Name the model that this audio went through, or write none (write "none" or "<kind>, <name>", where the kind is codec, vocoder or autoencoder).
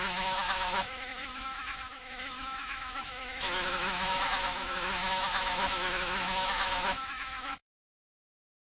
autoencoder, DAC-VAE